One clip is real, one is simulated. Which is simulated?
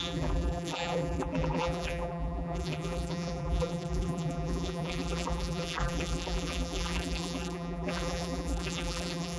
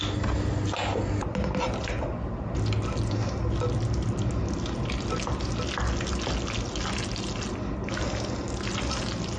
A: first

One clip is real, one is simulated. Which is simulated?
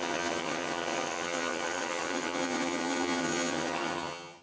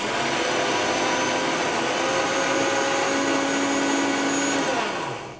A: first